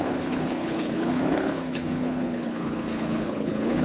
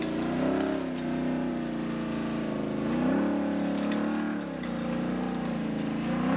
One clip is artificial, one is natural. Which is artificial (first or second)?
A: first